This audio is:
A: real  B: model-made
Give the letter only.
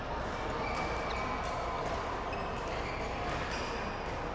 A